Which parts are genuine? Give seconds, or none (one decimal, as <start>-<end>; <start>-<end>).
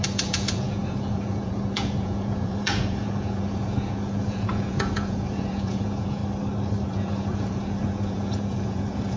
6.2-6.9